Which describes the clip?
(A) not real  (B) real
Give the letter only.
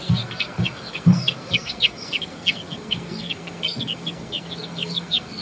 A